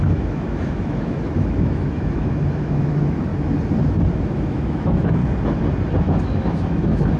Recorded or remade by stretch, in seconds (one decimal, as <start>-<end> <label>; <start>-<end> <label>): 0.0-3.3 remade; 3.3-4.1 recorded; 4.1-5.2 remade; 5.2-6.0 recorded; 6.0-7.2 remade

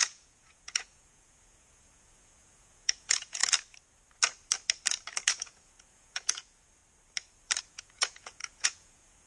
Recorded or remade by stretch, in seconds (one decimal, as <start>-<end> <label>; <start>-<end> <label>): 0.0-3.4 remade; 3.4-5.3 recorded; 5.3-6.8 remade; 6.8-7.6 recorded; 7.6-9.3 remade

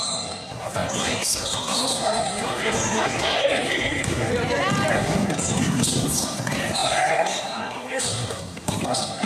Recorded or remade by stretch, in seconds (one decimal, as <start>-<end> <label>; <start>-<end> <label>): 0.0-4.3 remade; 4.3-4.9 recorded; 4.9-9.3 remade